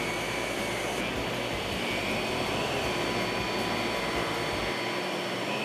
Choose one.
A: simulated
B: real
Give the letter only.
B